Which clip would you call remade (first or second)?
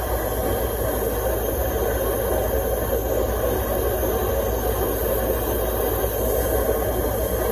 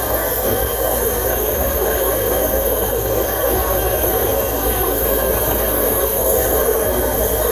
second